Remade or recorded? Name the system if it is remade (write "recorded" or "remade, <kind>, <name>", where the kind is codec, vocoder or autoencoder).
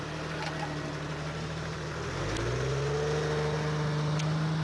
recorded